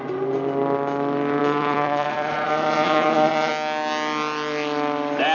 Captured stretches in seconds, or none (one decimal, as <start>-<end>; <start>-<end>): 0.0-1.4; 3.5-5.3